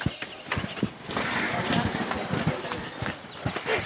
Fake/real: real